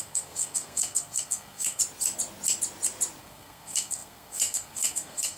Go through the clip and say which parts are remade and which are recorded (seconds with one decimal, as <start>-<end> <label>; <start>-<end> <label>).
0.0-1.8 remade; 1.8-3.2 recorded; 3.2-5.4 remade